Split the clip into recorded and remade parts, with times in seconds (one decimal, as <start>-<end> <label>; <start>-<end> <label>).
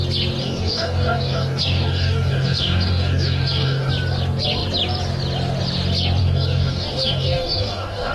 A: 0.0-0.4 recorded; 0.4-3.9 remade; 3.9-6.2 recorded; 6.2-8.1 remade